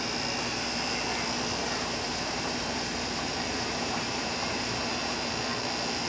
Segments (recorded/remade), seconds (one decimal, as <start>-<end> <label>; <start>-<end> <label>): 0.0-1.6 recorded; 1.6-5.3 remade; 5.3-6.1 recorded